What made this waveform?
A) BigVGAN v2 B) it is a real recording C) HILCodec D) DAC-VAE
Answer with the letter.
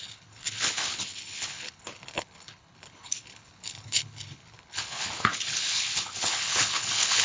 C